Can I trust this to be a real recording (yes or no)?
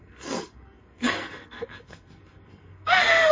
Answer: no